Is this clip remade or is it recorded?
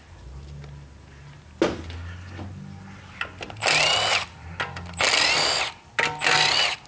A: recorded